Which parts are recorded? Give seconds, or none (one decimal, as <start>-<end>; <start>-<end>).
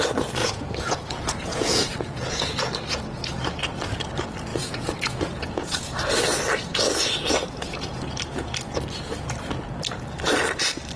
0.0-0.4; 2.7-4.5; 5.9-11.0